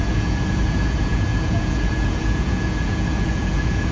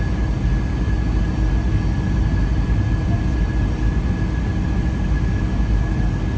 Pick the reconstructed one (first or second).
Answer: first